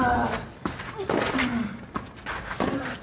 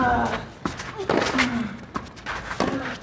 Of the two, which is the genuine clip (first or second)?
second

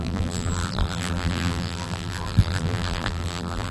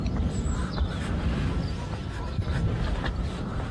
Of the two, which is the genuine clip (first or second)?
second